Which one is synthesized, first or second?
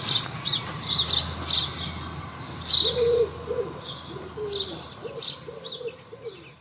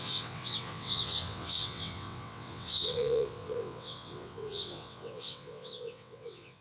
second